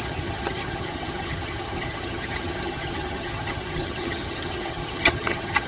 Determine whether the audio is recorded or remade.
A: remade